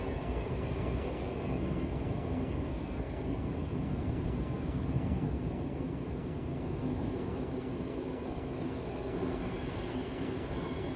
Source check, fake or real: fake